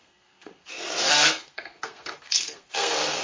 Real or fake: fake